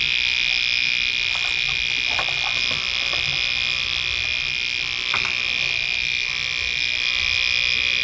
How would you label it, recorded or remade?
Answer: recorded